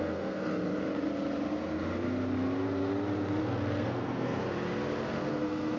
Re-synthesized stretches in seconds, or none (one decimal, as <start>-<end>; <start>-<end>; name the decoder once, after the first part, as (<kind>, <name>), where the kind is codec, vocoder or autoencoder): 0.0-0.5 (codec, SNAC); 3.4-4.4; 5.3-5.8